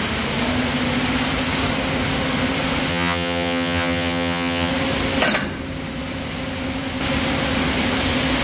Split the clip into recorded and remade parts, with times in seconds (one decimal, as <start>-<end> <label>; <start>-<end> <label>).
0.0-2.9 recorded; 2.9-4.7 remade; 4.7-8.4 recorded